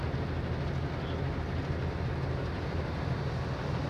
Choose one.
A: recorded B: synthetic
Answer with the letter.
A